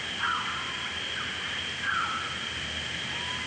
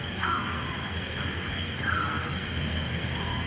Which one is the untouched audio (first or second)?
first